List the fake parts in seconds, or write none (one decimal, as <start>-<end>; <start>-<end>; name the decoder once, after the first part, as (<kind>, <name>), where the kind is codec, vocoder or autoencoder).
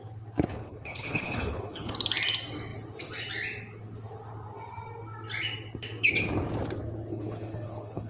0.5-1.9 (codec, HILCodec); 7.1-8.1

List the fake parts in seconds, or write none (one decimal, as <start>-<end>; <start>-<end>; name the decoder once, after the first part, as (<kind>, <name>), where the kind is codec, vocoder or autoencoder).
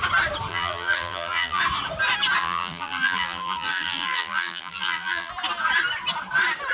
0.5-1.6 (vocoder, BigVGAN v2); 2.4-5.3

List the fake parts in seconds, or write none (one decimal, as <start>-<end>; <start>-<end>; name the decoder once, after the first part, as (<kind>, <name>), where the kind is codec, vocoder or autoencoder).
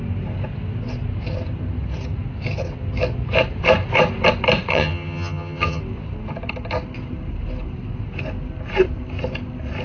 4.7-5.8 (vocoder, HiFi-GAN)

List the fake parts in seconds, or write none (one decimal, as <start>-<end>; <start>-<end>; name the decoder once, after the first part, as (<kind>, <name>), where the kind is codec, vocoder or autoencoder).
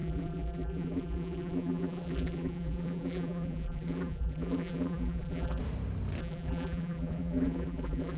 0.0-5.6 (vocoder, BigVGAN v2); 6.2-8.2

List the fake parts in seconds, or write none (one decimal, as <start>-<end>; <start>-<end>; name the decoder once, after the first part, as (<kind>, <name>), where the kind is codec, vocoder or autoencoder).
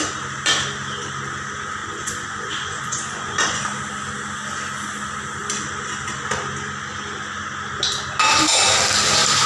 1.8-3.6 (vocoder, Vocos)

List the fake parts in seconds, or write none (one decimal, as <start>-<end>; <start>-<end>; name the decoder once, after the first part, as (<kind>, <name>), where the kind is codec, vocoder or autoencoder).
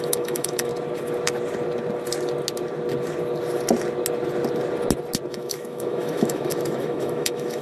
0.0-0.7 (autoencoder, DAC-VAE); 5.3-7.6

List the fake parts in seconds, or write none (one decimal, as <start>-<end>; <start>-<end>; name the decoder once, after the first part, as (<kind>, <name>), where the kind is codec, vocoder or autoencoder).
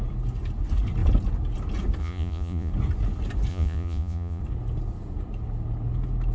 2.0-2.7 (vocoder, Vocos); 3.5-4.4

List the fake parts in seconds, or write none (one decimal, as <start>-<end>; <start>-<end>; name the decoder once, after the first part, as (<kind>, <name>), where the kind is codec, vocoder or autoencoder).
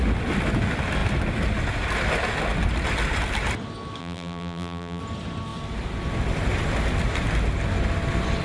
4.0-5.0 (vocoder, BigVGAN v2)